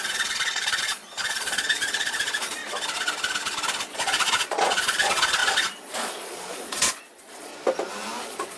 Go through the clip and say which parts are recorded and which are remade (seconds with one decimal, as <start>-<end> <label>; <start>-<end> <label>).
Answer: 0.0-2.6 remade; 2.6-3.9 recorded; 3.9-7.5 remade; 7.5-8.2 recorded; 8.2-8.6 remade